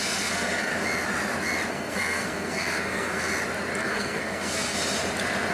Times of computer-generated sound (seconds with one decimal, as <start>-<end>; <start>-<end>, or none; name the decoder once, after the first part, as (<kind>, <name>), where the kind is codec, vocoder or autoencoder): 0.0-0.7 (codec, SNAC); 1.7-3.3; 3.8-4.8